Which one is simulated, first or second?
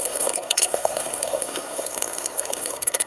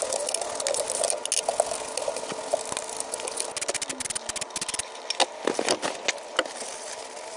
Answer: first